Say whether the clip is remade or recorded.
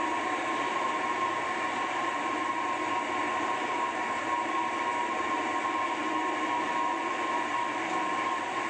recorded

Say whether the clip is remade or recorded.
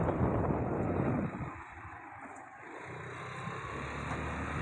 recorded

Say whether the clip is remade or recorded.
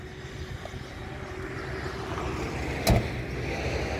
recorded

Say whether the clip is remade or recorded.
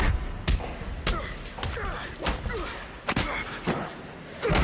recorded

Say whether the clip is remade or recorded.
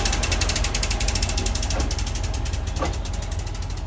recorded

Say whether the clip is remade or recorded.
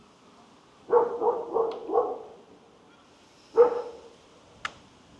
recorded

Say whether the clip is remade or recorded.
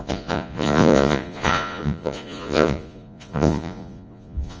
remade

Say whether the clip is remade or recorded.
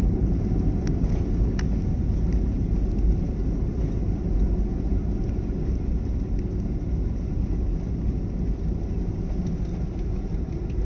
recorded